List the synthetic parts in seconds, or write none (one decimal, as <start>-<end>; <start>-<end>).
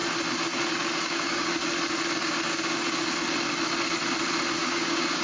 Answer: 1.0-1.5; 4.6-5.2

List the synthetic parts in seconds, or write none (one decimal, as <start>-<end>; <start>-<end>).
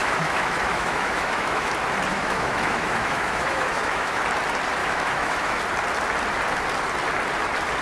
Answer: 0.0-1.7; 2.1-4.2; 4.8-5.6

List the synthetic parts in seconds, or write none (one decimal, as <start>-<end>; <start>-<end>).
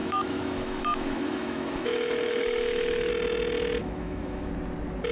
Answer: 0.0-3.1; 3.8-4.5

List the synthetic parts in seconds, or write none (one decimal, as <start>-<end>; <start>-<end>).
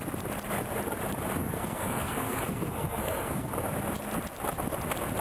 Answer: 1.4-3.5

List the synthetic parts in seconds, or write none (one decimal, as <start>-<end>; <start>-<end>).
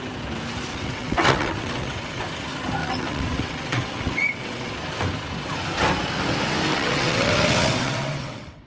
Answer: 0.7-2.2; 2.8-4.7; 6.7-8.7